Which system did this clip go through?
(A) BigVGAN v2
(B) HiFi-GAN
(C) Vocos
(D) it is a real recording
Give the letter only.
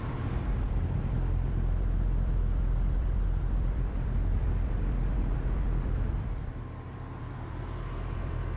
A